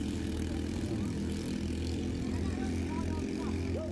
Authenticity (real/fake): real